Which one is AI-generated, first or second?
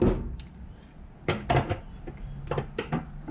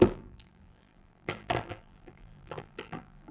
second